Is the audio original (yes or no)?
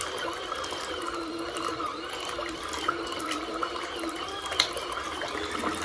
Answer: no